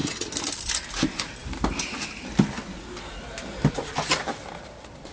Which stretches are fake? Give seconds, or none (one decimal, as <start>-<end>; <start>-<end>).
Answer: none